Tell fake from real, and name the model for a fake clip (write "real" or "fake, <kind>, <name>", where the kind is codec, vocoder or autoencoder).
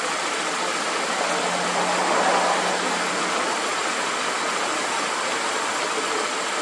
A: real